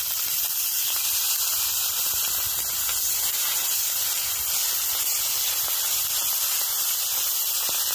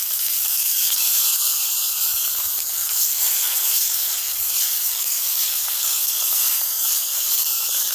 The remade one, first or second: second